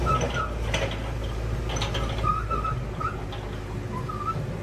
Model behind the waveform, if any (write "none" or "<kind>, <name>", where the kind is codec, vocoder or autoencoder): none